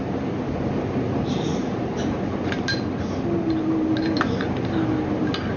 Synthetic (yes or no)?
no